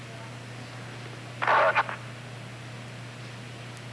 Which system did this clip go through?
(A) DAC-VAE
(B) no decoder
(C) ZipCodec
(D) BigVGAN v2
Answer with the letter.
B